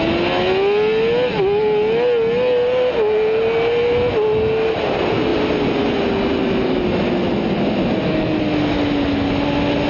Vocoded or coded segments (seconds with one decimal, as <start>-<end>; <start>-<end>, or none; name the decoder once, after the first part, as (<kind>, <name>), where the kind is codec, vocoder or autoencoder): none